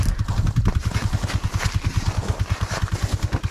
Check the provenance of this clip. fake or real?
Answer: real